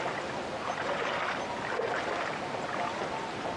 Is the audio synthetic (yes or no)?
no